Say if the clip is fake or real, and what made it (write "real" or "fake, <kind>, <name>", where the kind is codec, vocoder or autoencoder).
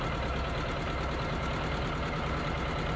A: real